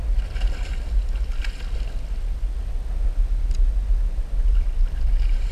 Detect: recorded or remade recorded